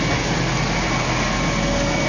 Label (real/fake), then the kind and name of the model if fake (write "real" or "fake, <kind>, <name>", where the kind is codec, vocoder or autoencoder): real